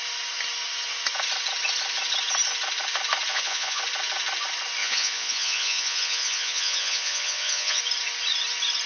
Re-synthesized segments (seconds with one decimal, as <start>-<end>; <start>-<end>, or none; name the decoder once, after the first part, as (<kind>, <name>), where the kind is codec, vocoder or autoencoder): 3.3-3.8 (vocoder, Vocos); 4.8-7.8

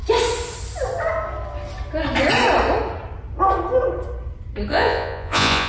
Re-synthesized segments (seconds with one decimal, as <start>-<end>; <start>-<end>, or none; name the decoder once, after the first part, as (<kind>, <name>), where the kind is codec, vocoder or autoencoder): 4.7-5.7 (vocoder, Vocos)

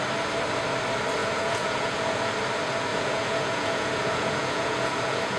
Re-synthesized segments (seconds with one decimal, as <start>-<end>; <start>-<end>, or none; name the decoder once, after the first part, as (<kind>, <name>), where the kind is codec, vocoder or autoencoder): 1.2-2.3 (vocoder, Vocos); 2.9-5.4